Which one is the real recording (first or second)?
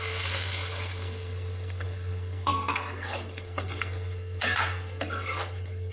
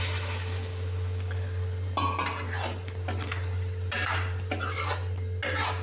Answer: second